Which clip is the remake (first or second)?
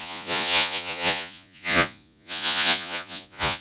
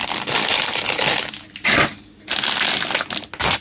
first